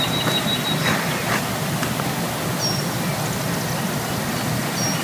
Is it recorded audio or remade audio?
recorded